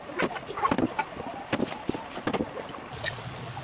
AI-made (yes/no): no